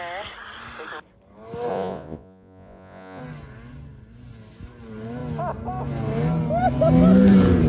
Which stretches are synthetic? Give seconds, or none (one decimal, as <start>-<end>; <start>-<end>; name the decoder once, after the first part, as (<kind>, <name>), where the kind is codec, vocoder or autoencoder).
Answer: 1.7-3.2 (vocoder, Vocos)